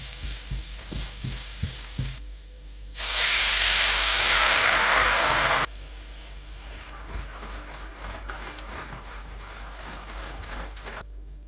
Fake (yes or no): yes